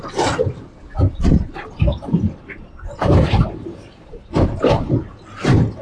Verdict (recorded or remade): recorded